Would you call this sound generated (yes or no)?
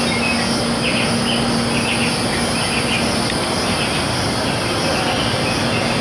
no